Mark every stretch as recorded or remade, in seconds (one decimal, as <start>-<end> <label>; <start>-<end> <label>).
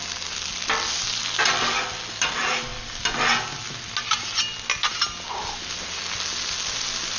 0.0-7.2 recorded